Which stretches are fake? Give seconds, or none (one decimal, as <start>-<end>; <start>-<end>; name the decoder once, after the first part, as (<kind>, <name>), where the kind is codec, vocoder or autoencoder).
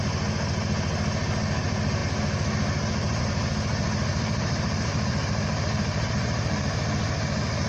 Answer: 4.1-6.8 (vocoder, BigVGAN v2)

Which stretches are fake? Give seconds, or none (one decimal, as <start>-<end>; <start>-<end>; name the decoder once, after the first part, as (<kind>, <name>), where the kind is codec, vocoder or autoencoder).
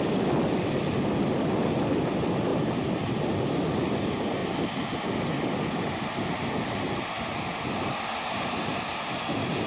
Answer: 0.0-2.5 (vocoder, BigVGAN v2); 3.2-4.4; 5.6-9.7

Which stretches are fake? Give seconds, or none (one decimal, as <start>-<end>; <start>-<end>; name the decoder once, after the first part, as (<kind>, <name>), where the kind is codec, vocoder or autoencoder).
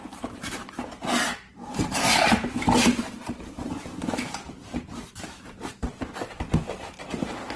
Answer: 1.3-5.8 (vocoder, BigVGAN v2)